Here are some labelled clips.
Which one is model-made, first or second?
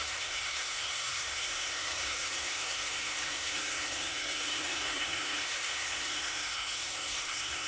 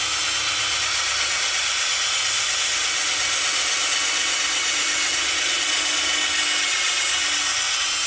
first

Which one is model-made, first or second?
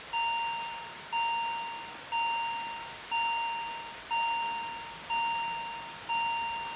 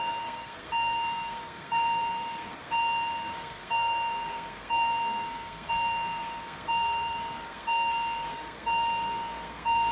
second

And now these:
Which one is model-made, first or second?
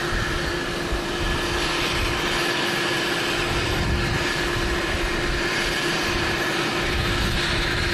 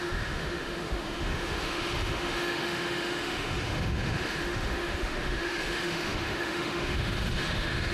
second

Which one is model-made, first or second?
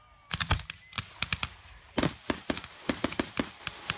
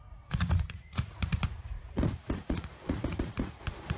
second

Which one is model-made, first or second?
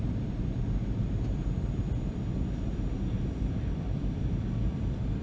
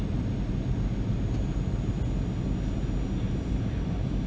first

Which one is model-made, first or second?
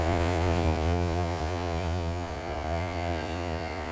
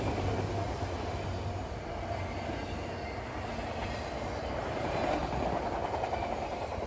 first